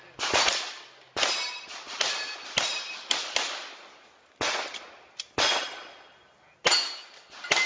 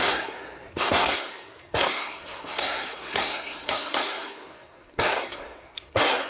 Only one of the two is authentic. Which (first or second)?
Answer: first